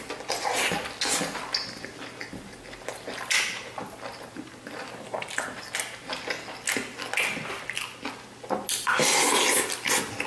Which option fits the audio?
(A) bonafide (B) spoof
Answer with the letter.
A